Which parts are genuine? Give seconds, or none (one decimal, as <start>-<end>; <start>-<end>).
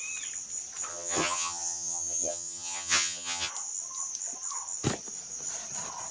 0.0-0.9; 3.5-6.1